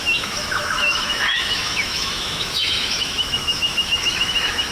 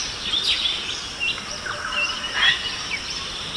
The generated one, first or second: first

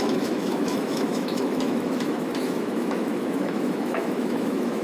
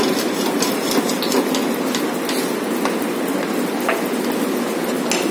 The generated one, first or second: first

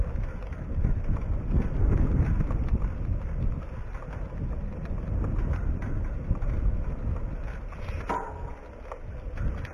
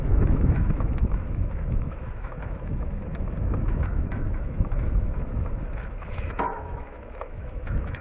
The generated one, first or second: second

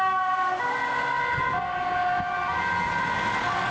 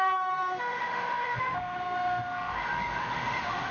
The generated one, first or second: second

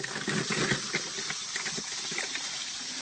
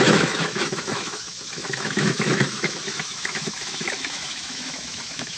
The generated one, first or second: second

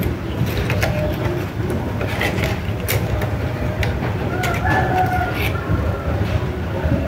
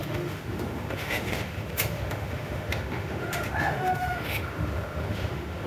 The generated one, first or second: second